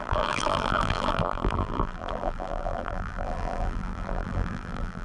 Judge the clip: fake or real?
fake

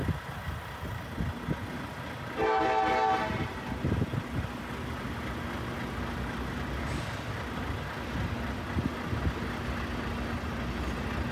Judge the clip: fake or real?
real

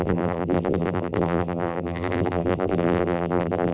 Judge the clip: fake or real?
fake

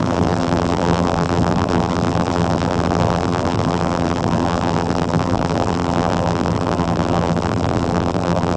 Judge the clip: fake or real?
fake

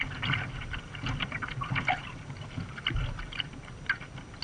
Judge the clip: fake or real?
real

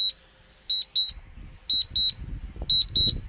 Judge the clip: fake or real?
real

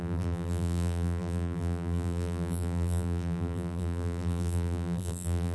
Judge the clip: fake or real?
fake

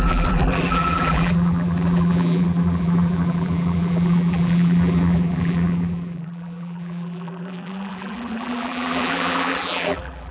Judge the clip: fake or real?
fake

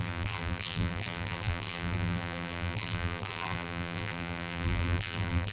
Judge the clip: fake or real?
fake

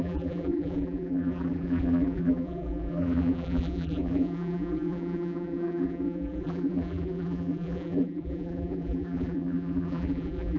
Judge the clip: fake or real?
fake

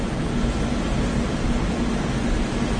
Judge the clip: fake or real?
real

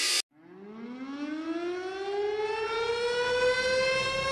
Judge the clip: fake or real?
real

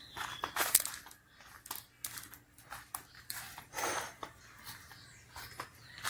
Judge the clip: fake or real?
real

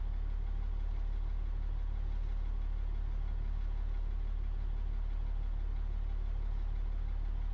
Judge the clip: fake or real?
real